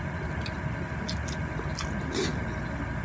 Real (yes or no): yes